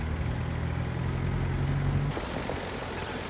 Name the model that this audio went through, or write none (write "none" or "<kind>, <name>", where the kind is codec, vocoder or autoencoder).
none